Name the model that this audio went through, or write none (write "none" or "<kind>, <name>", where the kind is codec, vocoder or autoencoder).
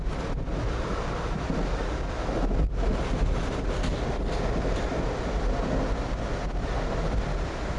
none